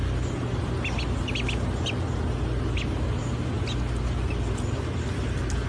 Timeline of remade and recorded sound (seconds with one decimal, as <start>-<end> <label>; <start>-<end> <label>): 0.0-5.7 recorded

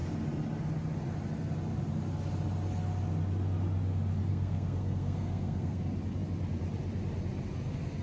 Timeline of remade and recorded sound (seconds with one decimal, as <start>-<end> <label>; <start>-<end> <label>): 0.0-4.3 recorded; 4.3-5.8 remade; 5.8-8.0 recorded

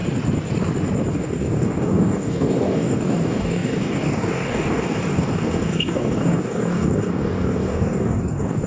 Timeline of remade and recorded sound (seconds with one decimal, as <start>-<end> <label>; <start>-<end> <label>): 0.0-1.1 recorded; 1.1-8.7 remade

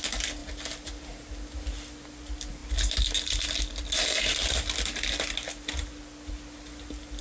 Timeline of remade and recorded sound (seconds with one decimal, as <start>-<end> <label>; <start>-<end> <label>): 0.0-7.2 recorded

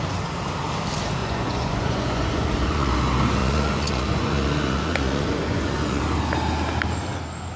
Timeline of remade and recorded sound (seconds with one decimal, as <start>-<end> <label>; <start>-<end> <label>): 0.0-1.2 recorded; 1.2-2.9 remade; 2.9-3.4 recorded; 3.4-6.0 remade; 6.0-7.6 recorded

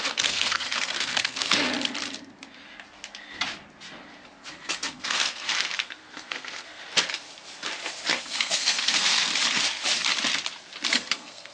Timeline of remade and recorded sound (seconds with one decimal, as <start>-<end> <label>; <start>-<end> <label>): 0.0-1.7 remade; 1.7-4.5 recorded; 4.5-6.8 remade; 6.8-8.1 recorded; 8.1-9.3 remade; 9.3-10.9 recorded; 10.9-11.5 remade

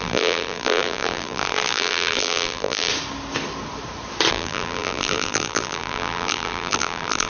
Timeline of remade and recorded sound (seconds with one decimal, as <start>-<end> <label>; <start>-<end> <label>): 0.0-2.9 remade; 2.9-4.3 recorded; 4.3-7.3 remade